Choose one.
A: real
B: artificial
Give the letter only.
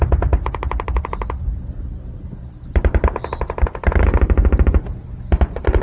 A